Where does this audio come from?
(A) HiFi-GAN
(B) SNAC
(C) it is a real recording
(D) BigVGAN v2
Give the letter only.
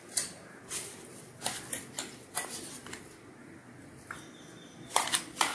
C